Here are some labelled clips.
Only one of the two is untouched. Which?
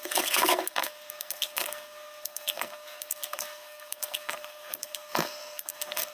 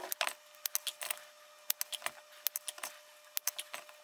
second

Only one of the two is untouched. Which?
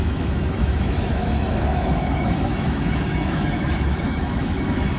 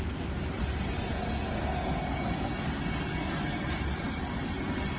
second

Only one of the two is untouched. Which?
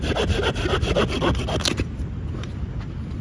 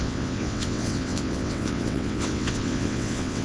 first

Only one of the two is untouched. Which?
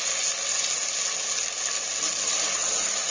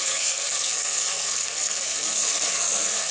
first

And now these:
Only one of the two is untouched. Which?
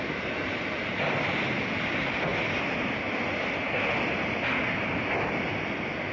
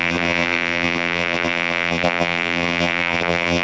first